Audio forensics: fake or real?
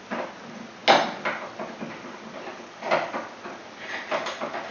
real